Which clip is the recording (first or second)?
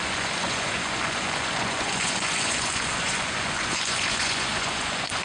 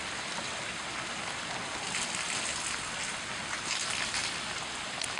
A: second